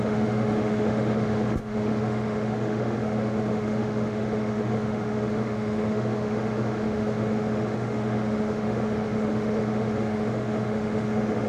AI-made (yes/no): yes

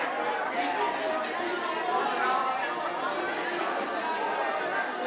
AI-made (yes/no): no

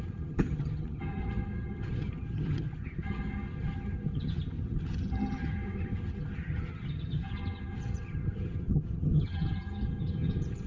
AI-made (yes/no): yes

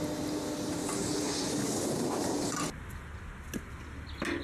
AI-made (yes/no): no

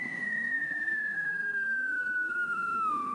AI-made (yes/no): yes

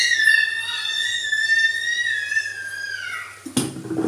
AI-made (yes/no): no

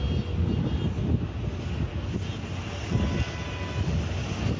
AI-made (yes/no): no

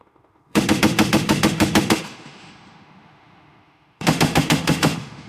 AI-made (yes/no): yes